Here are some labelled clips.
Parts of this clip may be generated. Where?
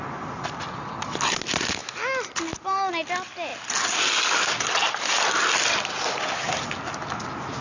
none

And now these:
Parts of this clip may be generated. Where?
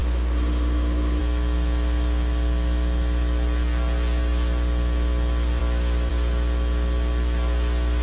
0.0-1.2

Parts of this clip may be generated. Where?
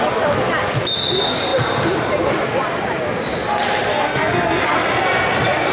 3.9-4.6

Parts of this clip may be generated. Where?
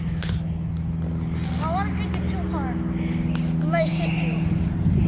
none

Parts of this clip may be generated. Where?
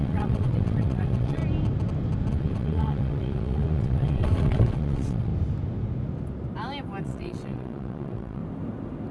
0.0-1.4; 2.3-5.3; 7.0-8.4